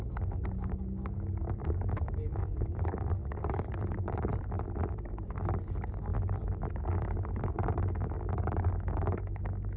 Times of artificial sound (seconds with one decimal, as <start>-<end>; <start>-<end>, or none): 0.0-4.3; 4.9-6.1; 6.7-9.8